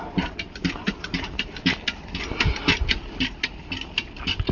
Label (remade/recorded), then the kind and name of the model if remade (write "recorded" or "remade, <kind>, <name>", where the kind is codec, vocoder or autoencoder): recorded